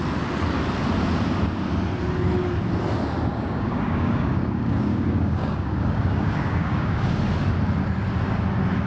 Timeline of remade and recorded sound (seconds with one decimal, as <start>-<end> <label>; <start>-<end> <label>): 0.0-3.3 recorded; 3.3-7.2 remade; 7.2-8.9 recorded